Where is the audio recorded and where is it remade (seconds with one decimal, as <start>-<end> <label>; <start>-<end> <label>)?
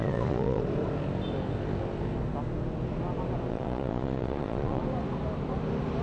0.0-0.6 remade; 0.6-3.5 recorded; 3.5-4.8 remade; 4.8-6.0 recorded